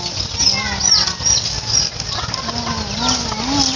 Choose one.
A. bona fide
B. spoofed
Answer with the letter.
A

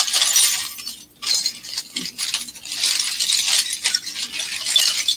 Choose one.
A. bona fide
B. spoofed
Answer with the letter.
A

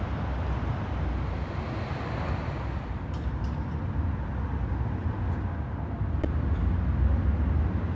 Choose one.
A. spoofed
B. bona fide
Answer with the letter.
B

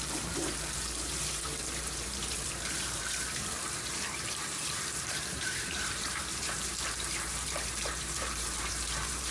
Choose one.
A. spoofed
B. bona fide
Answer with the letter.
A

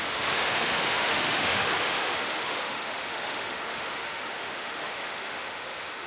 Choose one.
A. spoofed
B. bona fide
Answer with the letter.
A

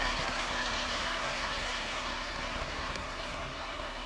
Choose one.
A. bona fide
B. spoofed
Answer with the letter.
B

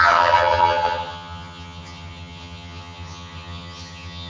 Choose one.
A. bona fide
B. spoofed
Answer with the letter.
B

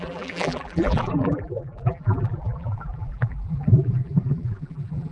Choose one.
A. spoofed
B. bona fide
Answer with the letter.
A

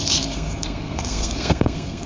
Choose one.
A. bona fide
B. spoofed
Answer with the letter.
B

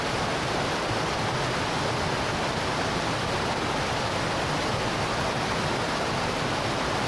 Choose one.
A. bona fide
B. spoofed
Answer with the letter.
A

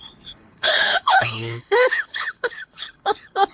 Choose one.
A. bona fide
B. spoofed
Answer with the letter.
B